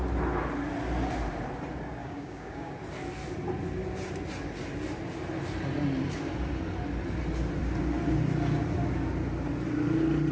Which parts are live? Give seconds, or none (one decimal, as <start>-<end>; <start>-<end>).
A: 0.0-2.0; 2.7-10.3

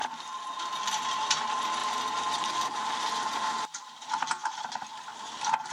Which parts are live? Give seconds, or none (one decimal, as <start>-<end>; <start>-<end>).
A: 0.0-5.7

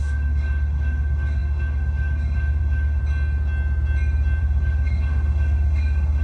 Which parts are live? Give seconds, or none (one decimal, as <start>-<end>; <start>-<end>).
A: 3.0-4.4

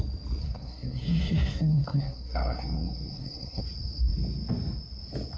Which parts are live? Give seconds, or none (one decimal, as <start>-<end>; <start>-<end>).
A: 0.0-0.4; 3.6-5.4

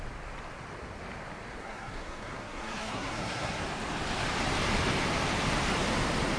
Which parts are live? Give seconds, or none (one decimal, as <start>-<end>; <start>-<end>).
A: 0.0-1.6; 3.6-6.4

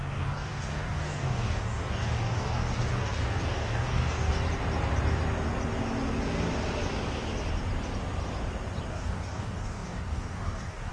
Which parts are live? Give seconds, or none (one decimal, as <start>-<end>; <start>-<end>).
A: 4.3-8.9

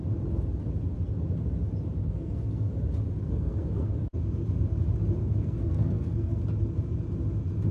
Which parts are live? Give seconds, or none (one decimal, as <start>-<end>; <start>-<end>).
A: 0.0-2.0; 2.7-3.2; 3.9-5.2; 6.4-7.7

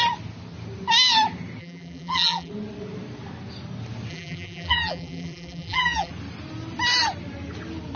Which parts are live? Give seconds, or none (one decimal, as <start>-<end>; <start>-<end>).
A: 0.0-1.6; 2.5-4.1; 6.1-8.0